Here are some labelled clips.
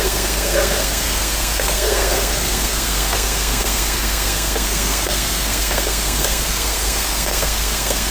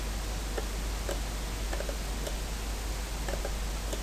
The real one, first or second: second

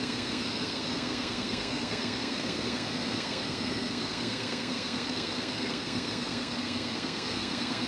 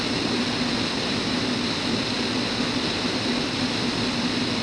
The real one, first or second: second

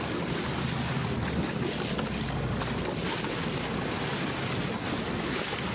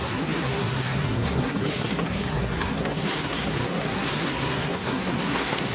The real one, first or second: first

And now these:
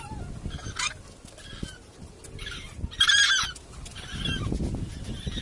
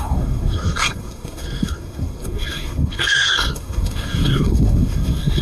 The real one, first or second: first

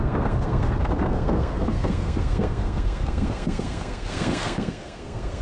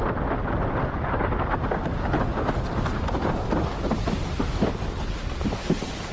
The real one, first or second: second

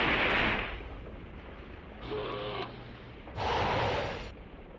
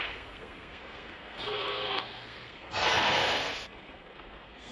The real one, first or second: first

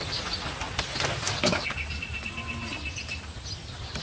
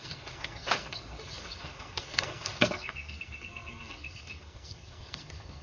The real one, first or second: first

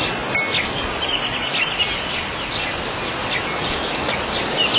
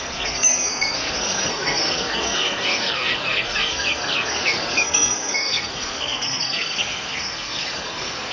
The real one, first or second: first